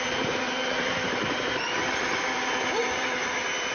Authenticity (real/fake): fake